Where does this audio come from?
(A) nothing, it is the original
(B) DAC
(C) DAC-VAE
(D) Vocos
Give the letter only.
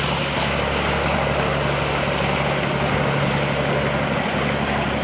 A